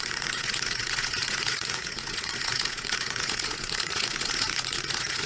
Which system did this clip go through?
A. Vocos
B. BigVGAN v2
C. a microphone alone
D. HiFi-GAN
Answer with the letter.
A